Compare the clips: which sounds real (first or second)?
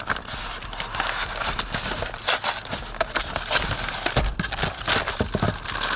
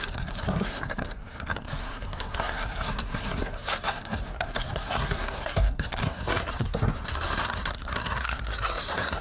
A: first